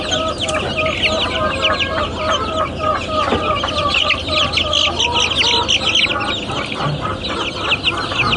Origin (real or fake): real